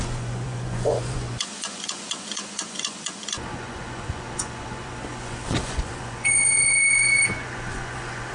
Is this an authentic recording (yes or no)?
no